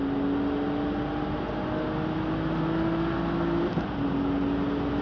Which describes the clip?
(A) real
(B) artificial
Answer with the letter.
A